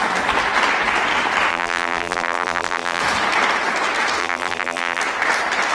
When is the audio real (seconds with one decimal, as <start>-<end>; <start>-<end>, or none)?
0.0-1.5; 3.0-4.2; 5.0-5.7